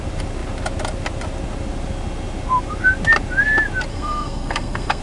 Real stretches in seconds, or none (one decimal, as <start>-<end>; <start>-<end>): 0.0-3.9